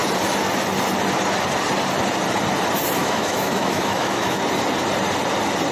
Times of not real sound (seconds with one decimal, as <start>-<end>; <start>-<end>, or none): 3.0-4.4